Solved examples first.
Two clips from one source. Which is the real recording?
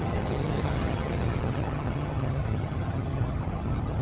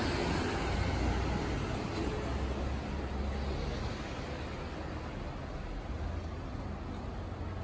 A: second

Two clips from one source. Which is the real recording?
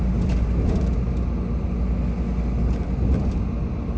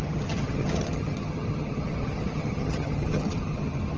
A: first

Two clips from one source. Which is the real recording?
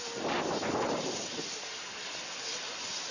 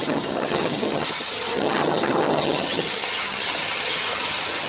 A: first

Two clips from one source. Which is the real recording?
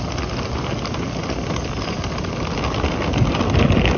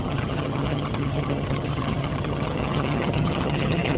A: first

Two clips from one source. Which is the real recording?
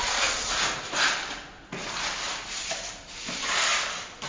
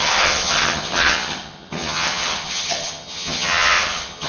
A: first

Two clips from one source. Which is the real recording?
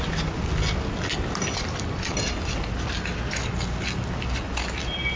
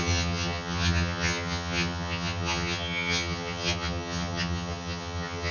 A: first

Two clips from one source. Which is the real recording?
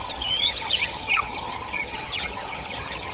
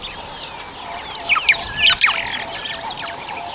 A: second